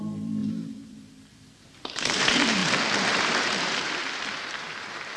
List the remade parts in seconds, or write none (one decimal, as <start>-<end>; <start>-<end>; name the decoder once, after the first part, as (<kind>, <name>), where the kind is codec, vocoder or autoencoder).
0.0-5.2 (vocoder, BigVGAN v2)